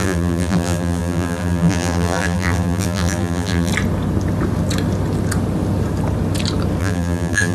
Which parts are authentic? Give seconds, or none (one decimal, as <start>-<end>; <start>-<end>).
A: 3.7-6.8